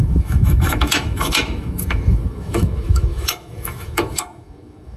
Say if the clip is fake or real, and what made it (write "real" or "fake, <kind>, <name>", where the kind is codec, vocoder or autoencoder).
fake, autoencoder, DAC-VAE